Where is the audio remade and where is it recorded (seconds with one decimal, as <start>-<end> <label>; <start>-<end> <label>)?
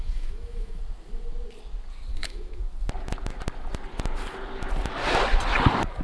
0.0-0.8 remade; 0.8-2.1 recorded; 2.1-2.6 remade; 2.6-6.0 recorded